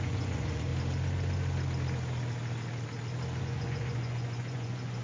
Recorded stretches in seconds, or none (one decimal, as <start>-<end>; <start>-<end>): 0.7-3.4

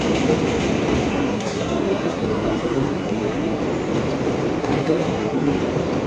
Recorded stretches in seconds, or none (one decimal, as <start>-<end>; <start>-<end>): 0.0-1.1; 3.6-4.6; 5.6-6.1

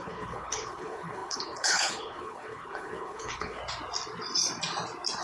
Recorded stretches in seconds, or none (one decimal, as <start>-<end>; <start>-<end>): 3.6-5.2

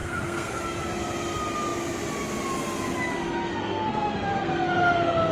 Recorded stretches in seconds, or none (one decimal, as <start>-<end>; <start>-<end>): 0.6-3.1

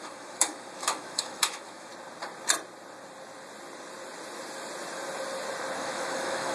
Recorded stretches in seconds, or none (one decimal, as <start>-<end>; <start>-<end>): 1.9-5.8

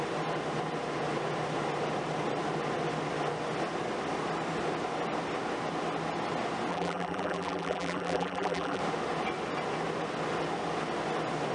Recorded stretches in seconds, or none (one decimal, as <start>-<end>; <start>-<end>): 0.0-6.7; 8.8-11.5

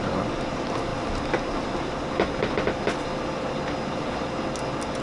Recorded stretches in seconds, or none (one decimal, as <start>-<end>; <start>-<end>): 0.0-5.0